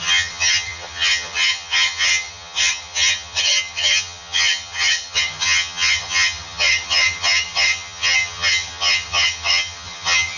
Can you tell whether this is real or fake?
fake